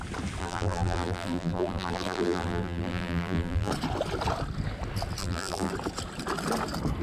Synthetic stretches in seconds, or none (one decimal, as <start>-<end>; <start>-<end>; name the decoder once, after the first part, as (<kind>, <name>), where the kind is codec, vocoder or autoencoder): 0.4-3.7 (vocoder, BigVGAN v2); 5.2-5.7